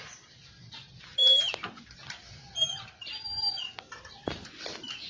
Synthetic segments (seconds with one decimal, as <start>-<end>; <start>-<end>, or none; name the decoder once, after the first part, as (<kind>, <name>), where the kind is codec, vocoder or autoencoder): none